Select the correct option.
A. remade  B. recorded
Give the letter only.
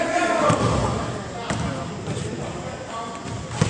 B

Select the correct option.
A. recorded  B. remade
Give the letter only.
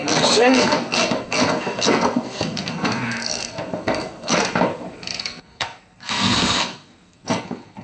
B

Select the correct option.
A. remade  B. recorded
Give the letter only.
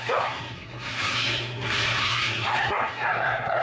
A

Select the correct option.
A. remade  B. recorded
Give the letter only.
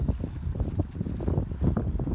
B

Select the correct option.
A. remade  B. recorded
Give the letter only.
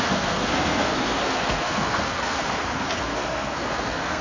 A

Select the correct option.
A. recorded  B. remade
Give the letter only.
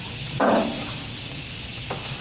A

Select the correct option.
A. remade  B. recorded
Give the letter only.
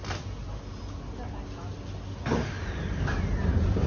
B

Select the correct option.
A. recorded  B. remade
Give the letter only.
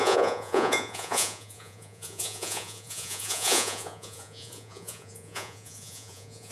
B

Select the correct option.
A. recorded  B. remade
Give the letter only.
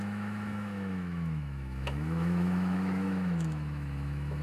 B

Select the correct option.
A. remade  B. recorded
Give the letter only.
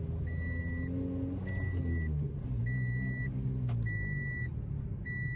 B